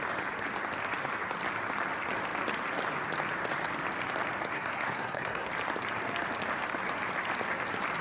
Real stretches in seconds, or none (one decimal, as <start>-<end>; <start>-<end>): 0.0-4.5; 5.5-8.0